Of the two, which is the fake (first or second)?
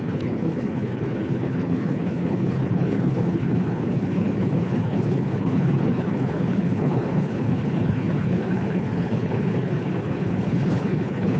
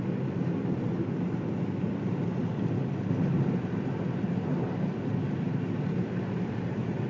first